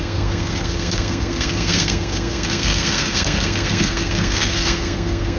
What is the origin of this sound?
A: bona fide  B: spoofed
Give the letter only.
B